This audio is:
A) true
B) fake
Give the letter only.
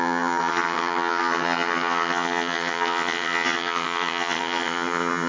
B